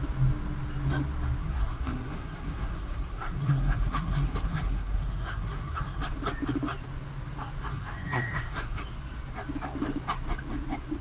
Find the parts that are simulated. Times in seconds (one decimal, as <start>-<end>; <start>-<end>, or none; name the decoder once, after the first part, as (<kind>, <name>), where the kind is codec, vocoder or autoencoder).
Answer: 1.4-6.0 (codec, SNAC); 7.7-8.8